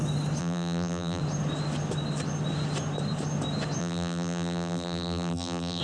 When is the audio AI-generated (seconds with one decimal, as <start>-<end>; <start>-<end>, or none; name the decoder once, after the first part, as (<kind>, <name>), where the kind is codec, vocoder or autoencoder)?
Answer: 0.4-1.2 (vocoder, BigVGAN v2); 3.8-5.8